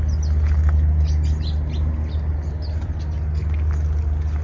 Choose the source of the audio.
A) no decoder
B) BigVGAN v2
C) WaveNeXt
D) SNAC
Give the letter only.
A